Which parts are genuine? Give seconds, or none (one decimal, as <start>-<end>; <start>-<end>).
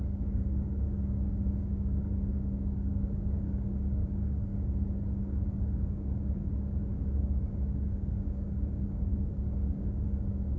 4.5-5.1